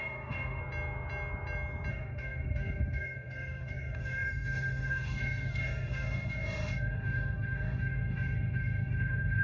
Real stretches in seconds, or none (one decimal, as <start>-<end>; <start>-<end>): 0.6-1.9